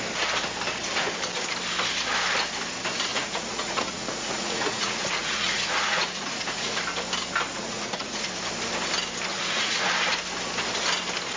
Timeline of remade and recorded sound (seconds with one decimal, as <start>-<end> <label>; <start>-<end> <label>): 0.0-3.1 recorded; 3.1-6.8 remade; 6.8-7.5 recorded; 7.5-8.3 remade; 8.3-9.3 recorded; 9.3-9.9 remade; 9.9-11.4 recorded